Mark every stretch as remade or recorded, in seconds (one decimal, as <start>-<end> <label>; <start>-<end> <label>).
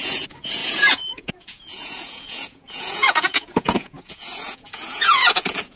0.0-5.8 remade